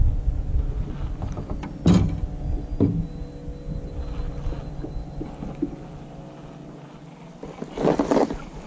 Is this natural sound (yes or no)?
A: yes